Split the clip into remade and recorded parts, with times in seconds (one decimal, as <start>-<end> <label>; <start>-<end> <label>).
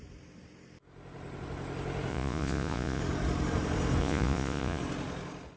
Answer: 0.0-2.1 recorded; 2.1-3.0 remade; 3.0-4.0 recorded; 4.0-4.8 remade; 4.8-5.6 recorded